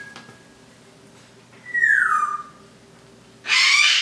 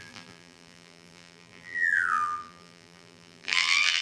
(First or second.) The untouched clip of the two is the first